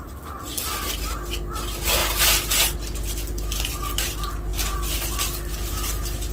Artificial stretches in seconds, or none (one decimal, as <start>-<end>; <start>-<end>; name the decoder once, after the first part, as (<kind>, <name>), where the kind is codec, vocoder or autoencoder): none